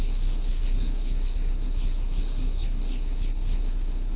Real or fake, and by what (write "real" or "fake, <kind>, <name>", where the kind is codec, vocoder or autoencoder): fake, codec, SNAC